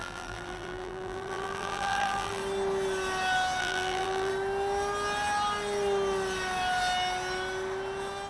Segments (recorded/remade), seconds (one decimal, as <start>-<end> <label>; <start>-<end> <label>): 0.0-2.4 remade; 2.4-3.6 recorded; 3.6-4.3 remade; 4.3-8.3 recorded

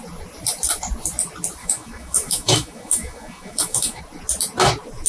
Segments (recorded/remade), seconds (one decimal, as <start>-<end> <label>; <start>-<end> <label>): 0.0-1.6 recorded; 1.6-4.0 remade; 4.0-5.1 recorded

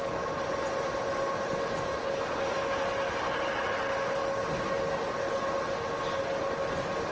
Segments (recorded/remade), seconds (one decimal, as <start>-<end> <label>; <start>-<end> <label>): 0.0-7.1 recorded

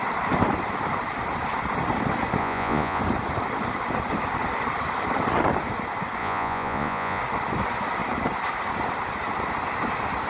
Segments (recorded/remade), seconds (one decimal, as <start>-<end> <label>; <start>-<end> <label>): 0.0-2.4 recorded; 2.4-3.0 remade; 3.0-6.2 recorded; 6.2-7.2 remade; 7.2-10.3 recorded